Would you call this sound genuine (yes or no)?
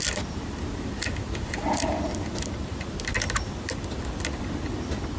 yes